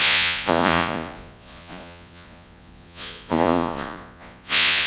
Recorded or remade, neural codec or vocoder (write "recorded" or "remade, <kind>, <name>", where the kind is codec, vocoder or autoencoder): remade, vocoder, Vocos